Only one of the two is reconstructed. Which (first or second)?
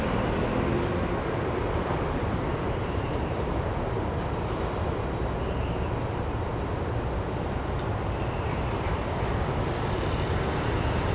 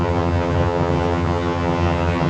second